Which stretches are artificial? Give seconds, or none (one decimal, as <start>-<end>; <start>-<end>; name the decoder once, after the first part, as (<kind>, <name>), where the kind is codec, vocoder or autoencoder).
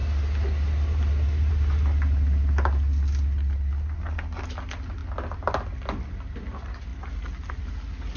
none